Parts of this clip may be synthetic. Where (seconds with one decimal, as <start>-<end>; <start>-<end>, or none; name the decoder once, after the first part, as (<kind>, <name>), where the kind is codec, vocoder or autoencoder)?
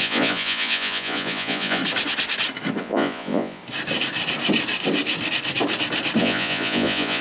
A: 0.0-1.8 (vocoder, Vocos); 2.8-3.6; 6.2-7.2